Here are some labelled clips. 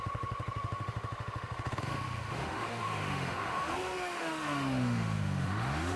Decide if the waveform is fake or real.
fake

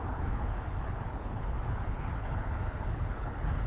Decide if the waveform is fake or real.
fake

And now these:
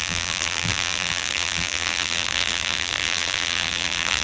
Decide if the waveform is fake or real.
fake